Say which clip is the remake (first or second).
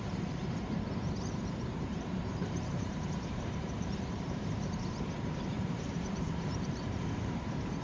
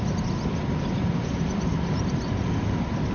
first